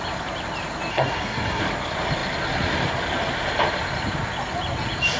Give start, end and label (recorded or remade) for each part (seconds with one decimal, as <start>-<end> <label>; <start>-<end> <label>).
0.0-0.9 recorded; 0.9-1.6 remade; 1.6-5.2 recorded